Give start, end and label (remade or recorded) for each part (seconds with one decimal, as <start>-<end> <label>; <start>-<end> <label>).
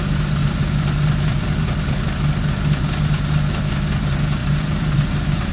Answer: 0.0-4.4 recorded; 4.4-5.5 remade